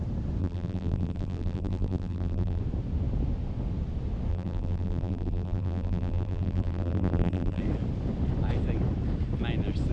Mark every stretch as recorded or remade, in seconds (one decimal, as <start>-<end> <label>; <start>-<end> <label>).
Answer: 0.0-0.4 recorded; 0.4-2.6 remade; 2.6-4.3 recorded; 4.3-7.6 remade; 7.6-9.9 recorded